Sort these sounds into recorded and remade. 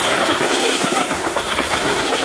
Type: remade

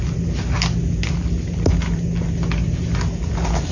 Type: recorded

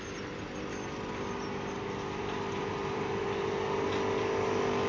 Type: recorded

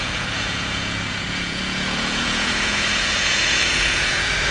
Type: remade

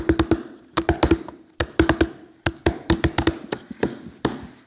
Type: recorded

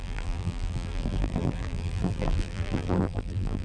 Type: remade